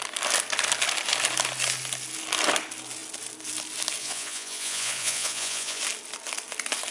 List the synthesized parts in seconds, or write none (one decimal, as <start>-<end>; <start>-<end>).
4.0-5.8

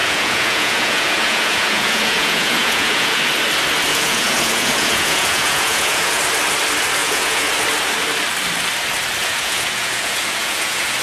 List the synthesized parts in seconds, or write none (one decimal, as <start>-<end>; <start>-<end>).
0.0-3.2; 3.9-6.2; 7.0-7.5; 9.2-11.0